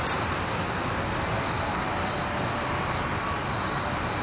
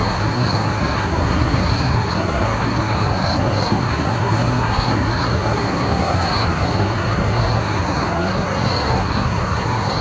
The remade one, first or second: second